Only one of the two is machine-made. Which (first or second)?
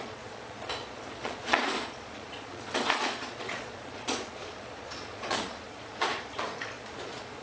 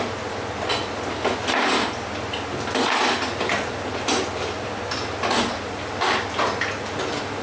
first